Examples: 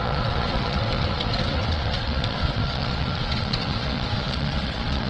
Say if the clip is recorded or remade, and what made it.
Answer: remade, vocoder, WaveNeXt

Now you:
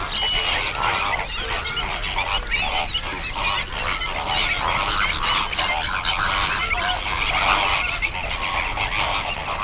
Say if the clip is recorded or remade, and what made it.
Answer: recorded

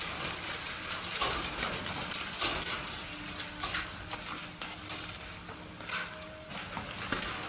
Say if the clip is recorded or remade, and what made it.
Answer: recorded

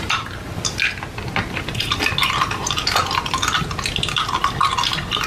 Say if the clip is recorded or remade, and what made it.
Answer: recorded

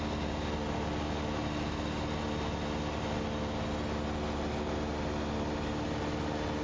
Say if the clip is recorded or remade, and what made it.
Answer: recorded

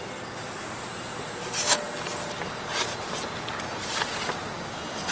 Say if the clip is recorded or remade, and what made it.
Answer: recorded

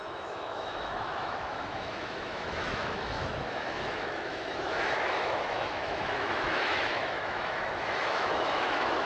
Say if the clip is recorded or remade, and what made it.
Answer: remade, autoencoder, DAC-VAE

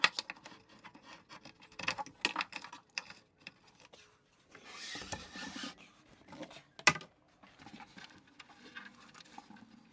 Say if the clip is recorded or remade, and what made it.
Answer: recorded